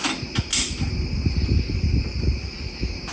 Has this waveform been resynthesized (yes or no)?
no